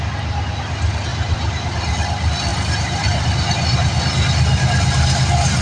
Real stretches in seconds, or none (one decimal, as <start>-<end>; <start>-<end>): 0.0-1.1; 1.9-2.5; 4.0-5.6